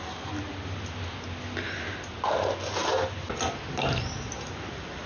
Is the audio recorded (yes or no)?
yes